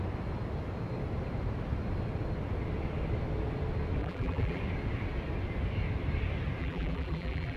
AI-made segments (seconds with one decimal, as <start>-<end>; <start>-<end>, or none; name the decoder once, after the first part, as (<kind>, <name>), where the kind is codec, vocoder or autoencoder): 4.0-4.6 (vocoder, BigVGAN v2); 6.6-7.6

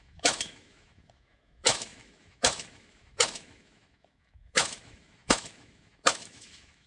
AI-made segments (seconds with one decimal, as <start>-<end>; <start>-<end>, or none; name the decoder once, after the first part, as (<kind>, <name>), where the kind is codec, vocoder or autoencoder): 0.0-6.9 (autoencoder, DAC-VAE)

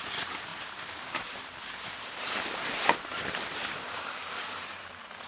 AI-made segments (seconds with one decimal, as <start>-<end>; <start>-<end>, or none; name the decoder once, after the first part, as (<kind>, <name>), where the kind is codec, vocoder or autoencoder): 0.0-5.3 (vocoder, BigVGAN v2)

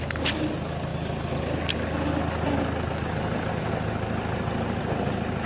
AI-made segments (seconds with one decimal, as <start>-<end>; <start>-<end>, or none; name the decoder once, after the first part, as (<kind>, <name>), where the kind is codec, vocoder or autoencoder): none

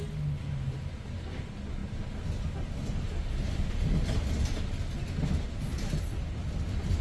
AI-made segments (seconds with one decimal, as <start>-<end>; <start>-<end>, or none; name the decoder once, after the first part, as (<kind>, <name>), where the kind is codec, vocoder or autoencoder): none

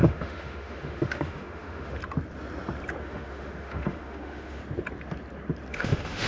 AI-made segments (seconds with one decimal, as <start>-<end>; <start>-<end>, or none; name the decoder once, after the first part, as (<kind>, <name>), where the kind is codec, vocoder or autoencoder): 0.0-2.0 (autoencoder, DAC-VAE); 3.0-4.6; 5.7-6.3